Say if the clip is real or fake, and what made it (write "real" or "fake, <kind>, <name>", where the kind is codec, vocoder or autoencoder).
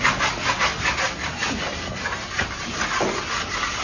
real